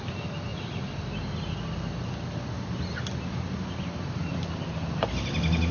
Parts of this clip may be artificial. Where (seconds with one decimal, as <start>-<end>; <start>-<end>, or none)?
none